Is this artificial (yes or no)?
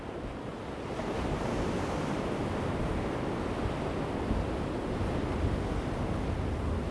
no